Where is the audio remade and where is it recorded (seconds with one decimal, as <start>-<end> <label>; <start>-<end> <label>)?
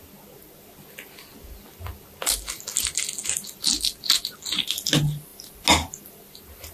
0.0-6.7 recorded